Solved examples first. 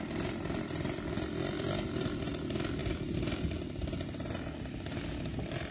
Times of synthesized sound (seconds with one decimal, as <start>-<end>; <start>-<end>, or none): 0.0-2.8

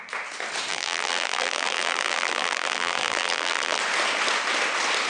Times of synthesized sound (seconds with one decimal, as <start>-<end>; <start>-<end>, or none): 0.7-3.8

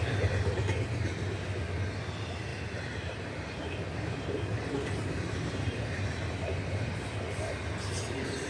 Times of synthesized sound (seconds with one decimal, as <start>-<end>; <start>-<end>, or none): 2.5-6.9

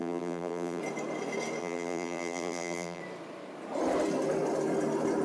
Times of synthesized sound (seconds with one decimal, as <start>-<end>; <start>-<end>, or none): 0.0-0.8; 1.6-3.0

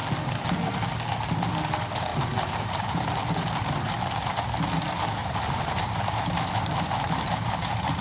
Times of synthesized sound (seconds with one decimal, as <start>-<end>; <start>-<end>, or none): 2.1-3.0; 5.2-8.0

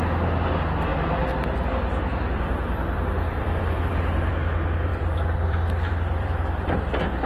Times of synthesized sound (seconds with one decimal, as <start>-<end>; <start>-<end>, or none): 3.3-4.3; 4.9-7.3